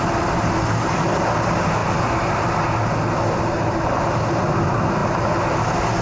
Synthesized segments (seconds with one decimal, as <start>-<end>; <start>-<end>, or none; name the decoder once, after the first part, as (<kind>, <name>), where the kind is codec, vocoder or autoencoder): none